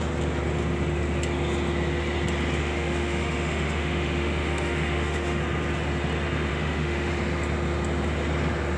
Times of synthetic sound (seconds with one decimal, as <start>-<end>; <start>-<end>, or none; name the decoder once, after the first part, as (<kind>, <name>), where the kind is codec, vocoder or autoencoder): 2.6-5.4 (autoencoder, DAC-VAE); 6.5-7.1